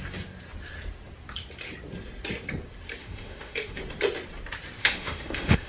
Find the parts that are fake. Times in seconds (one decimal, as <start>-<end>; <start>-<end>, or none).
3.0-3.8; 4.8-5.7